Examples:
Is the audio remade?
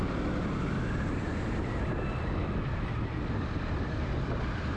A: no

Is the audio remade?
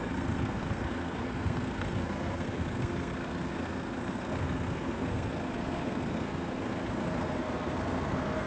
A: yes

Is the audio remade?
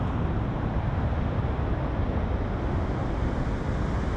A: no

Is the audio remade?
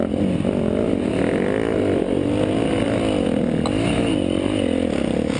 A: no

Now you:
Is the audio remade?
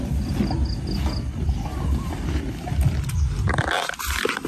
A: no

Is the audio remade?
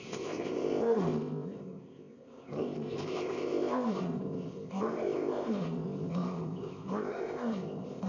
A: yes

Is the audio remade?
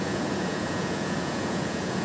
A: yes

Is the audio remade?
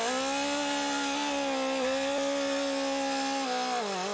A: no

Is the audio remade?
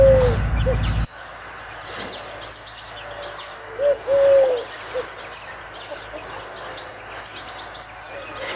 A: no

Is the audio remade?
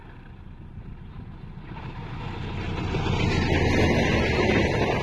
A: no